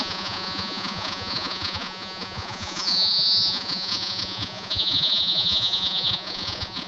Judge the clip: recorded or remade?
remade